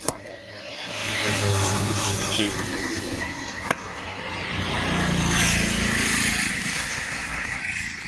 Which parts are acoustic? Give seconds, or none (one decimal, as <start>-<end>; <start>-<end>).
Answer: 4.2-6.5; 7.6-8.1